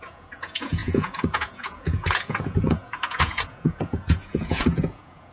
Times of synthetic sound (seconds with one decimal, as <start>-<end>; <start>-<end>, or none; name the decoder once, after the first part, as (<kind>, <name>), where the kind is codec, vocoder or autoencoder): 0.0-5.3 (vocoder, Vocos)